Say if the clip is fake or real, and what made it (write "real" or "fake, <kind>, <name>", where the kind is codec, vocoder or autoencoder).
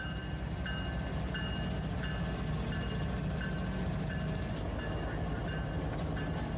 real